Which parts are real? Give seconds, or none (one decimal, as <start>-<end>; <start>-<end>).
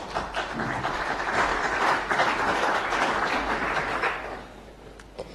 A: 0.0-1.5; 4.7-5.3